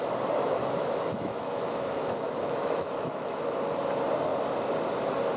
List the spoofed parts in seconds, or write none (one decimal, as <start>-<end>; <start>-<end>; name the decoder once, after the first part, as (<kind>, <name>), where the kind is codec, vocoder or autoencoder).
0.6-3.6 (autoencoder, DAC-VAE)